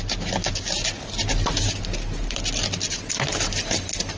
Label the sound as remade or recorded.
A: recorded